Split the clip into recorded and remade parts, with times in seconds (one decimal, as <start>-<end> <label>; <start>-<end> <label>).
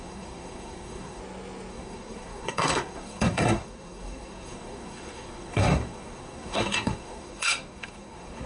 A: 0.0-1.2 remade; 1.2-1.7 recorded; 1.7-8.5 remade